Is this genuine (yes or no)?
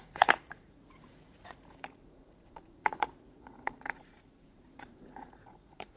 no